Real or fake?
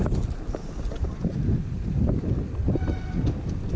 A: real